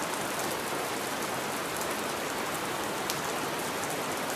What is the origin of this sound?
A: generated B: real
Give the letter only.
B